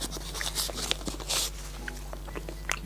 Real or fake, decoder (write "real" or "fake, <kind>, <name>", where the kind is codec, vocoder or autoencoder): real